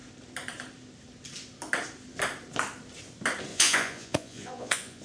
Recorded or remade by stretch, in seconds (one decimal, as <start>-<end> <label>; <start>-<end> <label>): 0.0-3.5 recorded; 3.5-5.0 remade